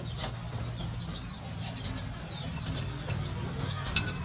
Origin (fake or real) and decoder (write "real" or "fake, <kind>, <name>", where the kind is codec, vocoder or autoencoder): real